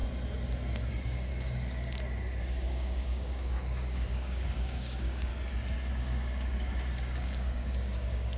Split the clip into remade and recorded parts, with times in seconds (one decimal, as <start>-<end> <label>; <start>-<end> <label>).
0.0-0.9 recorded; 0.9-1.3 remade; 1.3-2.4 recorded; 2.4-5.3 remade; 5.3-5.9 recorded; 5.9-8.4 remade